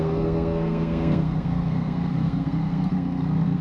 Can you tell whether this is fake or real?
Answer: fake